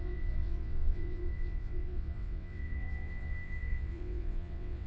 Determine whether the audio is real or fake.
fake